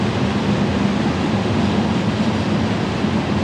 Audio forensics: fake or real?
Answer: real